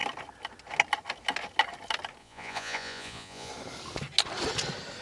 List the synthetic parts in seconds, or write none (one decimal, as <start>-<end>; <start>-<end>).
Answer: 2.2-3.5